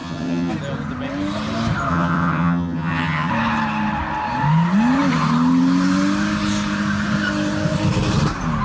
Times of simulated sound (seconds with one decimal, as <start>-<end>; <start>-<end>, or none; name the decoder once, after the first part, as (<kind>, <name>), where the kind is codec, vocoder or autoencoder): 0.0-0.5 (vocoder, HiFi-GAN); 1.9-3.3